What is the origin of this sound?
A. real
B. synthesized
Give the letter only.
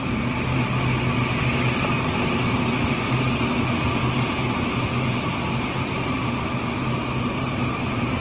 A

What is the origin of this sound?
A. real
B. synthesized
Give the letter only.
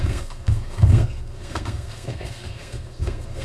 B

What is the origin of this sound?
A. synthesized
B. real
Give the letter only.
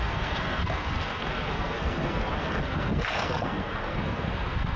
A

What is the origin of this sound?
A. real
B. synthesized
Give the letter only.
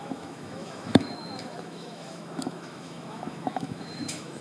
B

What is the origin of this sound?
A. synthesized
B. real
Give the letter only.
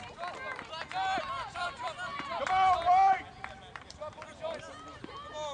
B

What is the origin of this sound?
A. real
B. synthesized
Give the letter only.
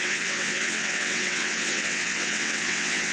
B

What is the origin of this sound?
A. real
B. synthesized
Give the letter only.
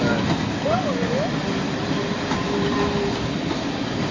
A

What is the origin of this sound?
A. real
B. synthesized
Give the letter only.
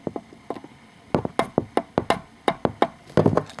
A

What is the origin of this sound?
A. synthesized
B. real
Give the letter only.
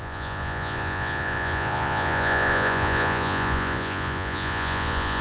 A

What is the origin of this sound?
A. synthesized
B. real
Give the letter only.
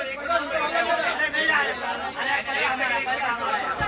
B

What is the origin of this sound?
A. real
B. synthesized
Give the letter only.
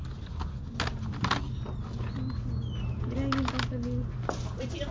A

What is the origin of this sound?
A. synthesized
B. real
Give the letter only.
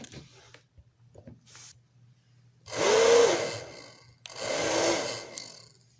B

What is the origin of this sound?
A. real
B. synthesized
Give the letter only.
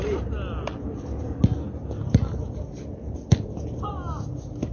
A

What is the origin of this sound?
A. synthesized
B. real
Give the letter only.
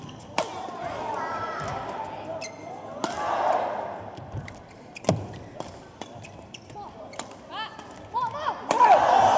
B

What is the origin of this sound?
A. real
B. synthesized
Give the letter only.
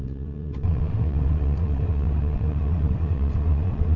B